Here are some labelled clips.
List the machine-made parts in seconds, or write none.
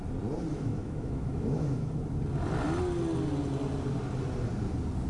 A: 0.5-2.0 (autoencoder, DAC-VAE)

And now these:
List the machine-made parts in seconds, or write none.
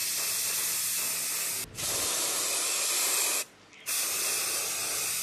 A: none